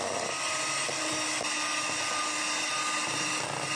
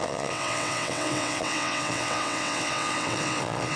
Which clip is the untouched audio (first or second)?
first